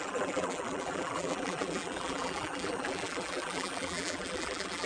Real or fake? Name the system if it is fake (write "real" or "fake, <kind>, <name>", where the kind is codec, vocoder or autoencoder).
fake, vocoder, BigVGAN v2